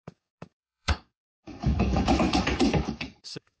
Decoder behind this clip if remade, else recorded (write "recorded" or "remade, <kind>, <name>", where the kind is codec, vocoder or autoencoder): remade, codec, DAC